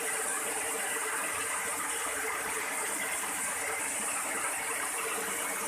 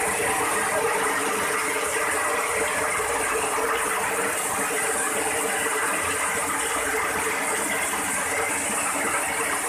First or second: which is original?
second